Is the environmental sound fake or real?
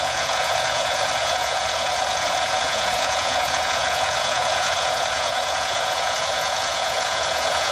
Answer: fake